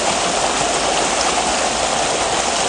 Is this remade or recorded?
recorded